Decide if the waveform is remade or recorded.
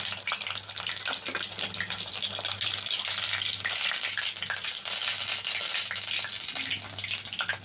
recorded